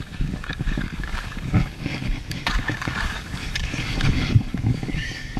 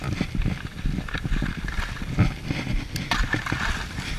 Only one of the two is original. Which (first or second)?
second